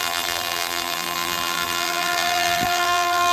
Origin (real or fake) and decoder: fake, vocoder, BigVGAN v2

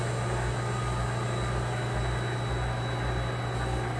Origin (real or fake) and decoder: real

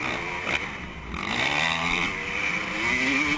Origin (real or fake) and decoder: real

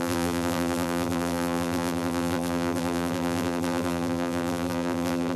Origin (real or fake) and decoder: fake, vocoder, BigVGAN v2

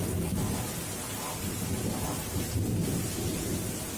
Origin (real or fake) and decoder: real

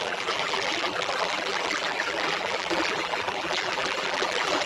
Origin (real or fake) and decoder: fake, vocoder, BigVGAN v2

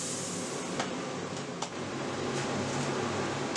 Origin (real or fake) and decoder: real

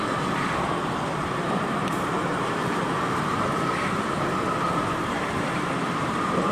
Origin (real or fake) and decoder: fake, vocoder, BigVGAN v2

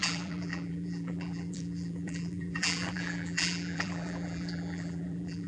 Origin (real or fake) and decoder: fake, vocoder, BigVGAN v2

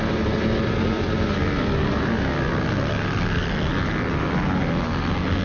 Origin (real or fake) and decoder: real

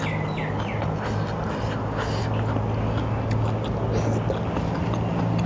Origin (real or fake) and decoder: real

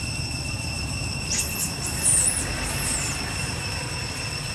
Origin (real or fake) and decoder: fake, vocoder, BigVGAN v2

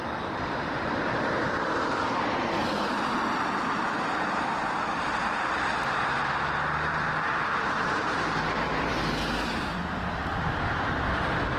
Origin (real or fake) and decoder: fake, vocoder, BigVGAN v2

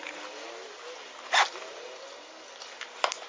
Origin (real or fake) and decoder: real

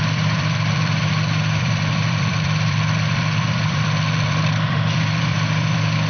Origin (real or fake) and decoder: fake, vocoder, BigVGAN v2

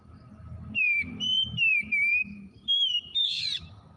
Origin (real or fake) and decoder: fake, vocoder, BigVGAN v2